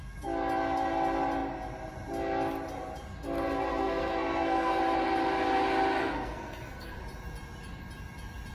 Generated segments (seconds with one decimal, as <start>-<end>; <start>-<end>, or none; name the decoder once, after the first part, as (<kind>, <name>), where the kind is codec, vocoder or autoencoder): 3.8-4.8 (codec, SNAC); 6.0-7.0